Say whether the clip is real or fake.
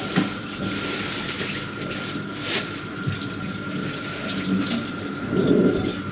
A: real